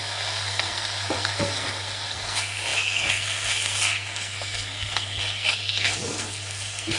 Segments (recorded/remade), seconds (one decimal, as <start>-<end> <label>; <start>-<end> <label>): 0.0-7.0 remade